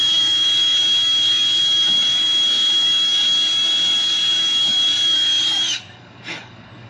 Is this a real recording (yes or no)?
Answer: no